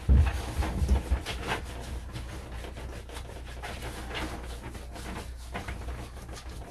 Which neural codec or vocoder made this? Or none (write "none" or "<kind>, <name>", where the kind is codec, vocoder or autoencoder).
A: none